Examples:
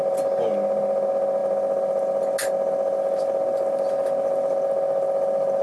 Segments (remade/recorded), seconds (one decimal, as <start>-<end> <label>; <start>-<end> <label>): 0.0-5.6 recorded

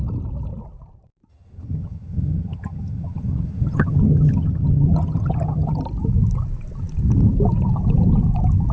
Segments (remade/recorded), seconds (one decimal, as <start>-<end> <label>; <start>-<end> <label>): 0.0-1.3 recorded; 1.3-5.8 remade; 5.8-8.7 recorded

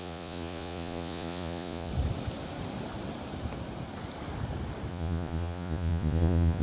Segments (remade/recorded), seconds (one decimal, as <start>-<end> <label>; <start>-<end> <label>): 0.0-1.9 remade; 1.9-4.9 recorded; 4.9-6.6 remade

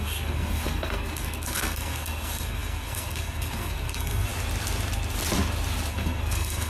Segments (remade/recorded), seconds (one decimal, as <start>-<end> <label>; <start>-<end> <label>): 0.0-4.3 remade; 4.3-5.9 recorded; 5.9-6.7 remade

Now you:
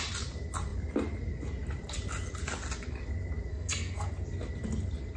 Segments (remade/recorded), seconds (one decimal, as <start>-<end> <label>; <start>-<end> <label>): 0.0-3.5 recorded; 3.5-4.1 remade; 4.1-5.2 recorded

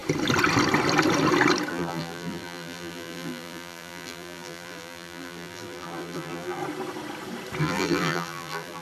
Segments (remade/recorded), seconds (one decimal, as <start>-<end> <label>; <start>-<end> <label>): 0.0-1.7 recorded; 1.7-6.6 remade; 6.6-7.6 recorded; 7.6-8.8 remade

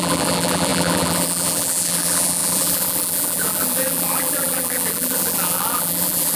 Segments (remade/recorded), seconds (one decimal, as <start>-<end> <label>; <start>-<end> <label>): 0.0-6.4 remade